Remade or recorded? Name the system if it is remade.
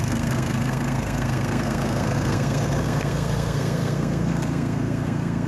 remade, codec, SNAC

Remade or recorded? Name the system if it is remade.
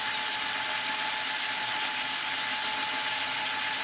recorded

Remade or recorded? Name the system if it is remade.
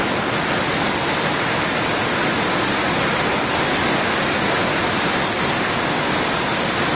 recorded